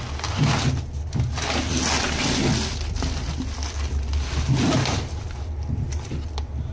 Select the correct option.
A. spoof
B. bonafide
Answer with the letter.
B